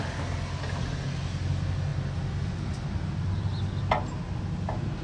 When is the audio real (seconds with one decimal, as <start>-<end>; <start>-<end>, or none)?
0.0-5.0